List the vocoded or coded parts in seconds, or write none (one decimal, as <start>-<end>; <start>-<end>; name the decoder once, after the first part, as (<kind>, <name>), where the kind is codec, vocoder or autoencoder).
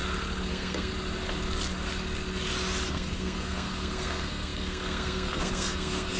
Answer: 0.5-0.9 (codec, SNAC); 2.9-6.2